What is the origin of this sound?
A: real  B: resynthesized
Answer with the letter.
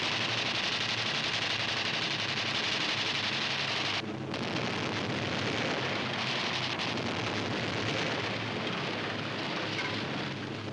A